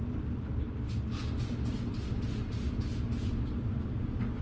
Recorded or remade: recorded